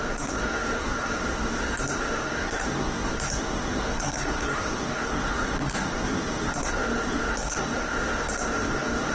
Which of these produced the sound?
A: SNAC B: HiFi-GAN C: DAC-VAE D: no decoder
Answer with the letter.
A